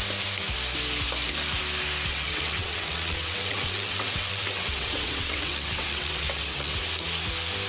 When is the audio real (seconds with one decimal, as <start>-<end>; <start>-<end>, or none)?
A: 0.0-2.1; 6.7-7.7